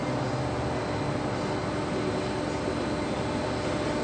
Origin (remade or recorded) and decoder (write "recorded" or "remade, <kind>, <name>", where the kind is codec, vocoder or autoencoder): recorded